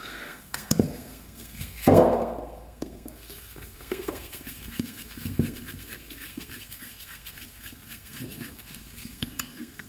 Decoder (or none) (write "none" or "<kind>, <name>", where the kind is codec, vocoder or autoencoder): codec, SNAC